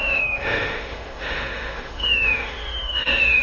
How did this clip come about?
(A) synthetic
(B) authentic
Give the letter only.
A